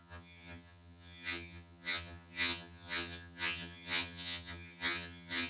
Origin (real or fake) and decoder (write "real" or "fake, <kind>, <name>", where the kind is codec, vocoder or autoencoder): fake, vocoder, HiFi-GAN